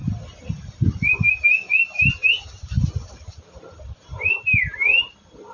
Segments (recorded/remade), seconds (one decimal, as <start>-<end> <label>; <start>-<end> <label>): 0.0-5.5 recorded